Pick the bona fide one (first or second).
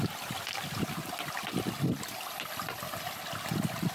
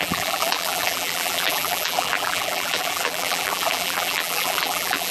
first